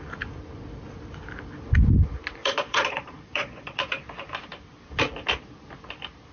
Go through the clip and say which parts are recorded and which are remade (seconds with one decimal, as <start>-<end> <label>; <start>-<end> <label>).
0.0-2.4 recorded; 2.4-3.8 remade; 3.8-6.3 recorded

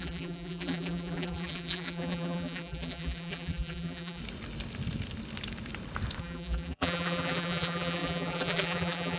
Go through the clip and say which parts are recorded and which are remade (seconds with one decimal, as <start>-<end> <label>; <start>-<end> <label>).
0.0-4.2 remade; 4.2-6.2 recorded; 6.2-9.2 remade

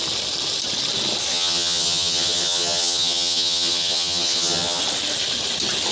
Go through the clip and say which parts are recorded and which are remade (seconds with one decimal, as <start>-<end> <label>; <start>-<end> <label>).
0.0-1.3 recorded; 1.3-4.8 remade; 4.8-5.9 recorded

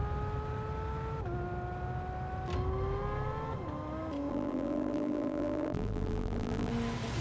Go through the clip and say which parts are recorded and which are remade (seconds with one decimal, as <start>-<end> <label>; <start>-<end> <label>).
0.0-4.3 recorded; 4.3-6.7 remade; 6.7-7.2 recorded

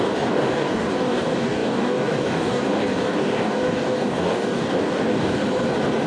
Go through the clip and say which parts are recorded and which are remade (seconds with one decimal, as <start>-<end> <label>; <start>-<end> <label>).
0.0-5.4 remade; 5.4-6.1 recorded

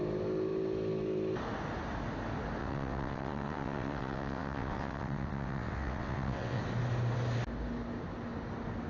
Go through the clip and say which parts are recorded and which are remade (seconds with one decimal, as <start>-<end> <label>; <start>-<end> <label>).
0.0-2.6 recorded; 2.6-6.6 remade; 6.6-8.9 recorded

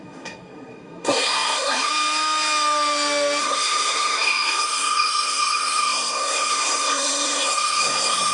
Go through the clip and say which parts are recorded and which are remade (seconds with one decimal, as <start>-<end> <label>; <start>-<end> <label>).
0.0-1.9 remade; 1.9-3.4 recorded; 3.4-8.3 remade

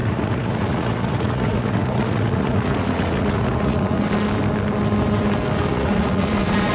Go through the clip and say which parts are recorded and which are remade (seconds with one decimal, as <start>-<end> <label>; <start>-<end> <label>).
0.0-4.0 remade; 4.0-5.7 recorded; 5.7-6.7 remade